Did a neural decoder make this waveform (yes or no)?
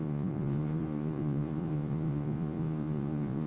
yes